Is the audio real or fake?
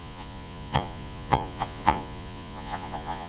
fake